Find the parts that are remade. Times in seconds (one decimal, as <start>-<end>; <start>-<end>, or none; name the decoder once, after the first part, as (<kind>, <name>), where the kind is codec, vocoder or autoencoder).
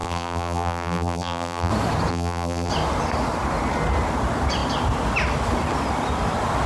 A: 0.0-1.7 (vocoder, BigVGAN v2); 2.1-2.7